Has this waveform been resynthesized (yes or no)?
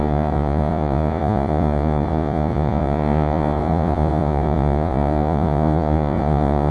yes